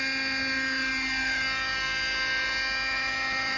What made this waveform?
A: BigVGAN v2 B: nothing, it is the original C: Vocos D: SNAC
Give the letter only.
B